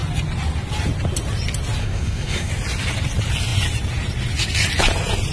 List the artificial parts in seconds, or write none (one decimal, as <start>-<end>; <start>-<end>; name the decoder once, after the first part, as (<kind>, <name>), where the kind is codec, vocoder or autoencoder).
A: 1.8-2.5 (codec, SNAC)